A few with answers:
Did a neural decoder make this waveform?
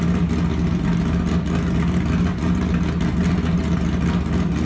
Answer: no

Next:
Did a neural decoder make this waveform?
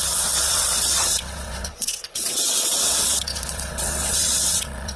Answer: yes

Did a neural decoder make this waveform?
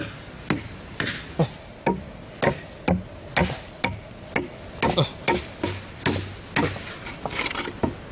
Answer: no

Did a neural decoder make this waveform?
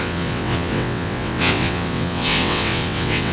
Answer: yes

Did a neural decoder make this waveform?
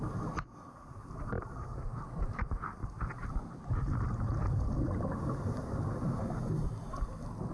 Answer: no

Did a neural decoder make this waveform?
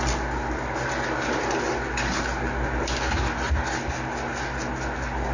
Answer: no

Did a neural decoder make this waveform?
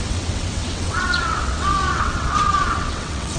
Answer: yes